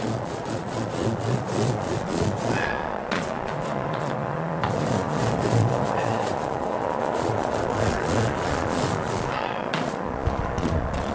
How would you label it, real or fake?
fake